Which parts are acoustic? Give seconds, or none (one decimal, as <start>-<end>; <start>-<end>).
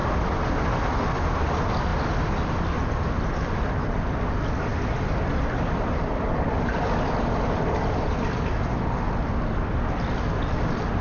0.0-11.0